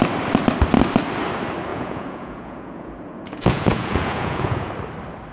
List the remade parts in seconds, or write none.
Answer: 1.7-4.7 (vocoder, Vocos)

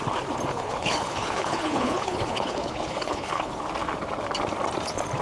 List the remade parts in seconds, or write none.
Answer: 0.5-3.6 (codec, HILCodec)

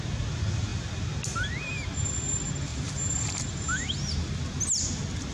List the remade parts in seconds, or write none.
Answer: none

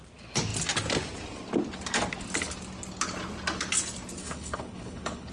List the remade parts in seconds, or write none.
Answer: 4.2-5.3 (codec, HILCodec)

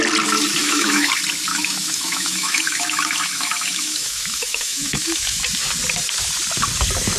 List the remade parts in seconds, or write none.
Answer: 0.6-1.1 (autoencoder, DAC-VAE); 1.5-5.4